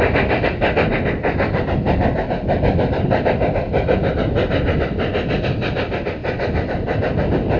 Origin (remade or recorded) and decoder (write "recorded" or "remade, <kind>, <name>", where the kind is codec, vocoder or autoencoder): recorded